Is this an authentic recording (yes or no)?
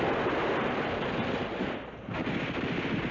yes